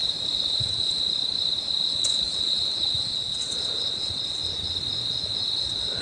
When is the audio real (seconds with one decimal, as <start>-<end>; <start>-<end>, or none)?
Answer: 0.0-0.5; 1.0-1.9; 4.4-5.6